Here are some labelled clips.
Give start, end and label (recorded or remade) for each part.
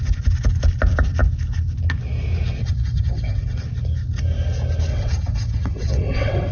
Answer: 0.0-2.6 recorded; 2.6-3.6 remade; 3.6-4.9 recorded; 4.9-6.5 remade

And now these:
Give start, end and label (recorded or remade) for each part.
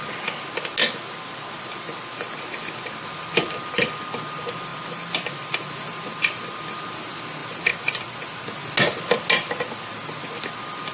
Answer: 0.0-10.9 recorded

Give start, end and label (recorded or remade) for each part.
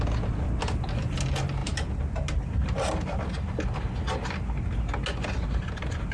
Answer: 0.0-6.1 recorded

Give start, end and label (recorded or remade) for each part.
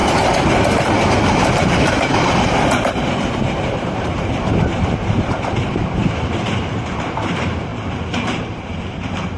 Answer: 0.0-1.2 recorded; 1.2-9.4 remade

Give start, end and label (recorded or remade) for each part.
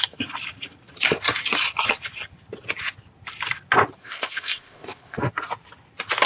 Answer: 0.0-4.0 recorded; 4.0-5.2 remade; 5.2-6.3 recorded